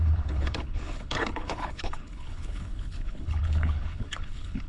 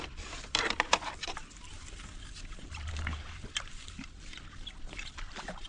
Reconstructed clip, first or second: first